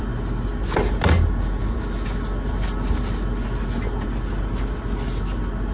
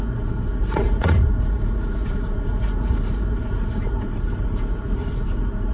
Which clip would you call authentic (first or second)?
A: first